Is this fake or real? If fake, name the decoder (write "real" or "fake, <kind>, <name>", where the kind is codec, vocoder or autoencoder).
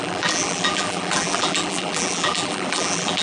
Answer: fake, vocoder, BigVGAN v2